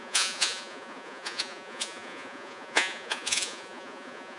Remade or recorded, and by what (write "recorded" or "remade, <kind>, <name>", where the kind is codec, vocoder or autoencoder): remade, vocoder, Vocos